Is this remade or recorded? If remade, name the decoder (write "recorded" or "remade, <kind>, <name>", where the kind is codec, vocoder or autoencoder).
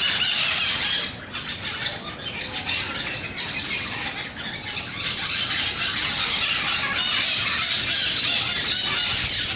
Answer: recorded